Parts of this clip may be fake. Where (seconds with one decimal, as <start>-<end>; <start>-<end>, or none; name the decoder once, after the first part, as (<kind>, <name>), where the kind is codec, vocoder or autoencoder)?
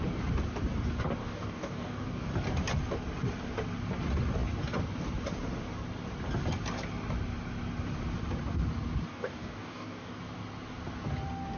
1.2-2.3 (codec, DAC); 9.1-10.2